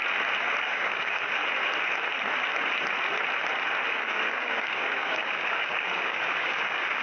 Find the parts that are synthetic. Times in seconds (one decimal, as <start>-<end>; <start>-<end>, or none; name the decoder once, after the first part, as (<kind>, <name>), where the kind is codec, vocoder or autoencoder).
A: 0.6-1.4 (codec, DAC); 3.9-7.0